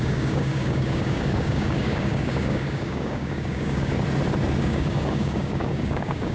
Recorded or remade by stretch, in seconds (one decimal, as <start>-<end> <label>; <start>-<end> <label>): 0.0-3.9 remade; 3.9-4.6 recorded; 4.6-6.3 remade